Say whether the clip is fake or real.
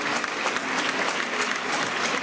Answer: real